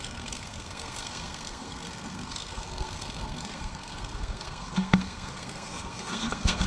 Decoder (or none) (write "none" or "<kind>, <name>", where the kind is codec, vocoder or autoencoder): codec, SNAC